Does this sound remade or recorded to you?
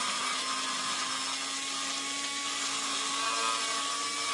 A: recorded